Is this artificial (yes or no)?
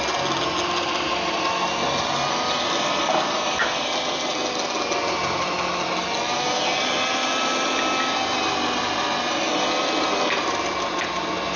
no